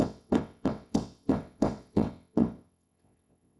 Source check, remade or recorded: remade